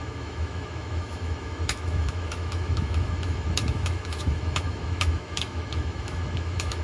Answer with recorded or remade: remade